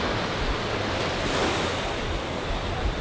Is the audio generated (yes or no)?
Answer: no